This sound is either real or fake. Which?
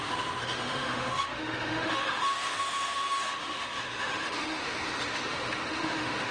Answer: fake